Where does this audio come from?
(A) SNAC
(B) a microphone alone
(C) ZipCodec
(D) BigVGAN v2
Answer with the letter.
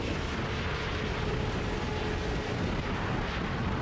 B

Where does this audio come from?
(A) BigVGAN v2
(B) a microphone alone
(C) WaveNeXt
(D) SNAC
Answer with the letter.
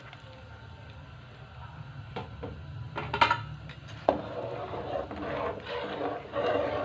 B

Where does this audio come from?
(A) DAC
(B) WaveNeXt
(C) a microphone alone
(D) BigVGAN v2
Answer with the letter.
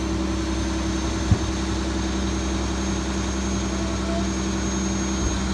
C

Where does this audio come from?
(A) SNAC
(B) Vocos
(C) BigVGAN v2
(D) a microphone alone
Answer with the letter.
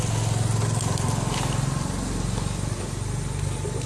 D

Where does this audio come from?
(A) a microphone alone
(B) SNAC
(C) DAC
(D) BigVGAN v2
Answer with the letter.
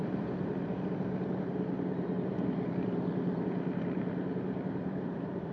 D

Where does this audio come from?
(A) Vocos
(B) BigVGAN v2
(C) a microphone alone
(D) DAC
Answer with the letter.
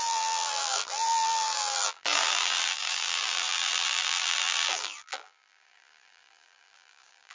B